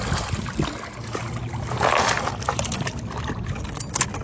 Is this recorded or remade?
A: recorded